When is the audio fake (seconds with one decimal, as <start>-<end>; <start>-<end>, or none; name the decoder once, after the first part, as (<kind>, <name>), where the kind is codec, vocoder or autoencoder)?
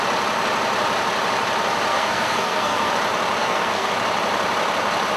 1.9-2.9 (codec, SNAC); 3.4-3.9